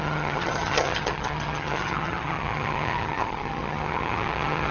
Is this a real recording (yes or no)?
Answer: no